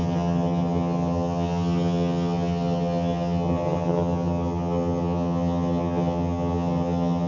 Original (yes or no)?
no